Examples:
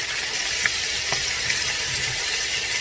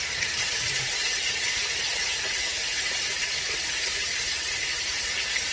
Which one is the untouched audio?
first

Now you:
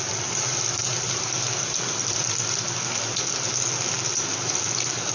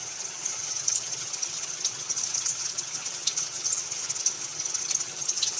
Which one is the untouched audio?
first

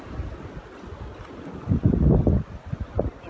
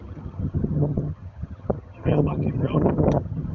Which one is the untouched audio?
first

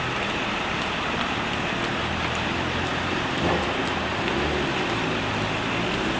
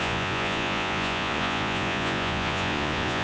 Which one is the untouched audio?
first